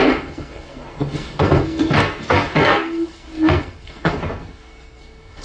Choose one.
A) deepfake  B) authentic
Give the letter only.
A